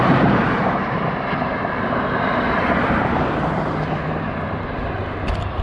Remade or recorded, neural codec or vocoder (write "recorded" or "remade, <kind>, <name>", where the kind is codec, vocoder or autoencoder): remade, vocoder, BigVGAN v2